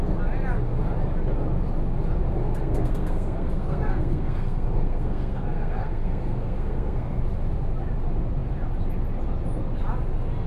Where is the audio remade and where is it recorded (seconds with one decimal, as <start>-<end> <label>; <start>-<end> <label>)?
0.0-2.4 recorded; 2.4-7.2 remade; 7.2-10.5 recorded